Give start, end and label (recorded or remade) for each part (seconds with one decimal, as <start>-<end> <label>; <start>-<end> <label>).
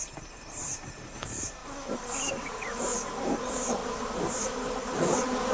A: 0.0-1.6 remade; 1.6-2.3 recorded; 2.3-2.9 remade; 2.9-3.4 recorded; 3.4-3.8 remade; 3.8-4.3 recorded; 4.3-5.5 remade